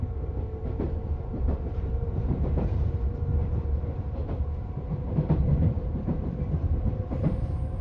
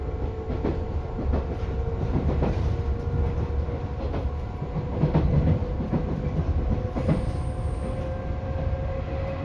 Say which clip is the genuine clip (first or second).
second